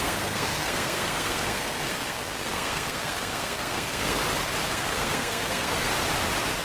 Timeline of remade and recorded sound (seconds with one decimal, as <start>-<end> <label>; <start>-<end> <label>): 0.0-4.2 remade; 4.2-4.7 recorded; 4.7-5.9 remade; 5.9-6.6 recorded